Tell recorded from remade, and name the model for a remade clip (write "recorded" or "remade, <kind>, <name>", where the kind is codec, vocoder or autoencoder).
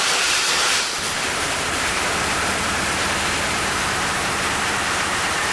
remade, vocoder, BigVGAN v2